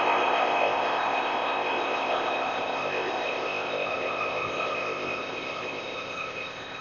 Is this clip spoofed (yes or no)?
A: yes